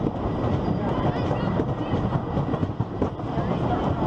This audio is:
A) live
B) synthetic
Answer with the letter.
A